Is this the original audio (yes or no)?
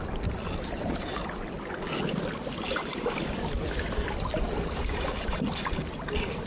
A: yes